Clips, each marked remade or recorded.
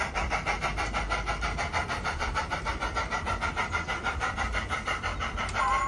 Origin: remade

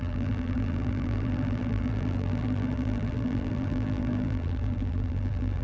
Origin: remade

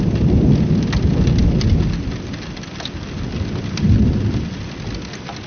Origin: recorded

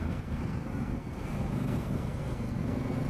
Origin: remade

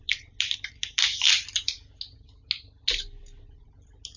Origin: recorded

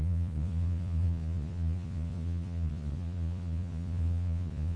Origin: remade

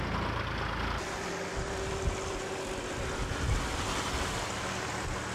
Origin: recorded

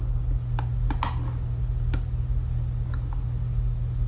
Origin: recorded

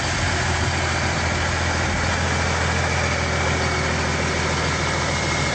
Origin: recorded